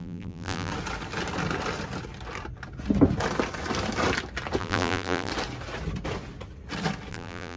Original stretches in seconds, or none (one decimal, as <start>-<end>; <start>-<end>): 0.7-4.6; 5.3-7.1